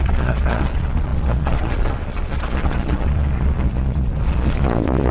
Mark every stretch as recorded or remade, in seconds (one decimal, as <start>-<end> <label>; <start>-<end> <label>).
0.0-5.1 remade